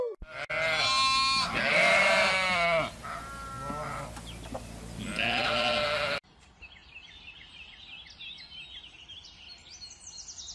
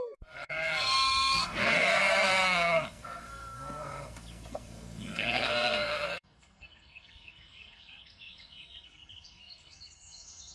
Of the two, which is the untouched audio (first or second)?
first